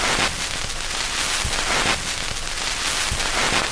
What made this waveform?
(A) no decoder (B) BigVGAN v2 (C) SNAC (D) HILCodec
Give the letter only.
A